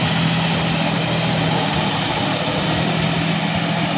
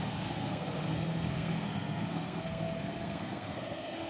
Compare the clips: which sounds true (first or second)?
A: first